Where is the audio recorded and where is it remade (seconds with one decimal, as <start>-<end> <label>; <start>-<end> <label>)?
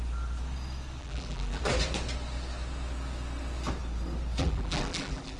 0.0-1.0 recorded; 1.0-1.6 remade; 1.6-4.4 recorded; 4.4-5.4 remade